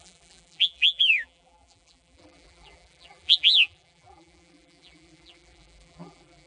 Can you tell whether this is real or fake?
fake